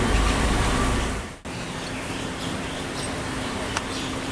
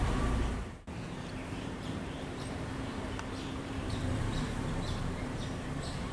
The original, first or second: first